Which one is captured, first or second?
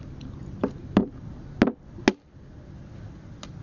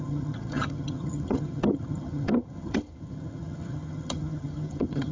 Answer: first